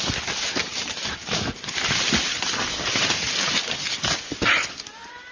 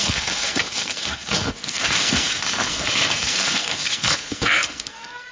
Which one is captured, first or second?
first